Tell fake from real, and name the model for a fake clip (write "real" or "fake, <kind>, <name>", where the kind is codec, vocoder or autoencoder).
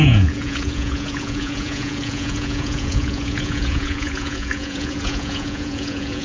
fake, vocoder, Vocos